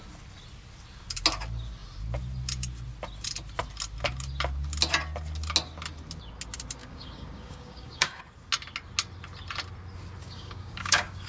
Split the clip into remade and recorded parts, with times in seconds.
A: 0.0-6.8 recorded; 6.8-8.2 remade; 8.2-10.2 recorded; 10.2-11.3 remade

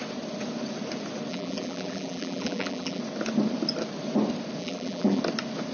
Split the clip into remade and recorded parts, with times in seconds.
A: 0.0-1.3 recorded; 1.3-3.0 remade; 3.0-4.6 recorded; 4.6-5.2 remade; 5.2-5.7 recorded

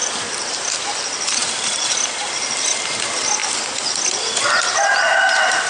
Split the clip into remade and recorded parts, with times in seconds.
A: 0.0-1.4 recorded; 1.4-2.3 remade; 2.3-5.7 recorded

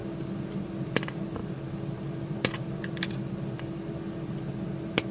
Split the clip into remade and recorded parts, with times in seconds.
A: 0.0-5.1 recorded

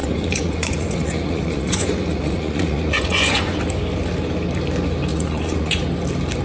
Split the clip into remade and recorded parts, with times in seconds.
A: 0.0-3.6 remade; 3.6-5.1 recorded; 5.1-5.8 remade; 5.8-6.4 recorded